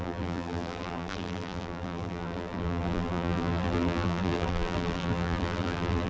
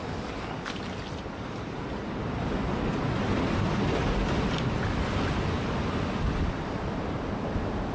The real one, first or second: second